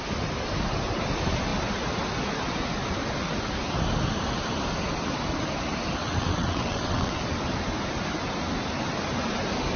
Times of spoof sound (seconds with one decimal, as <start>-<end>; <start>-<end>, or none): 6.0-7.2